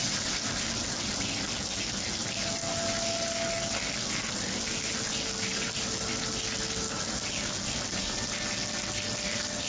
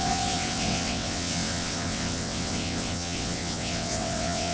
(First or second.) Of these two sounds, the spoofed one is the second